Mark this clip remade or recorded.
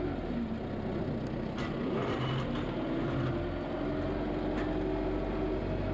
recorded